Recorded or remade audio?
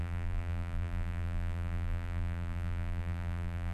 remade